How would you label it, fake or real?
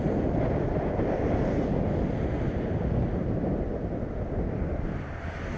real